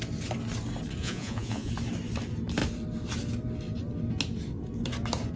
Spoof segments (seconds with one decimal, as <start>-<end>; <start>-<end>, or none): 1.0-1.7